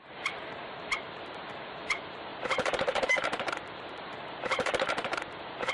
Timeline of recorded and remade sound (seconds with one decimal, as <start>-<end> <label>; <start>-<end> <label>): 0.0-5.7 remade